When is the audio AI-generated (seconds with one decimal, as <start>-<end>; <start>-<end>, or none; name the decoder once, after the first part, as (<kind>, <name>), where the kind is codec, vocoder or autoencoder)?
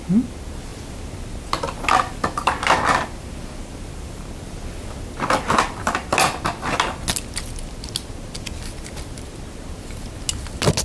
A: none